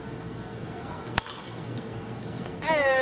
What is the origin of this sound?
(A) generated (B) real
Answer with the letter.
A